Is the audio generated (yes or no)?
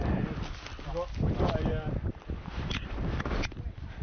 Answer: no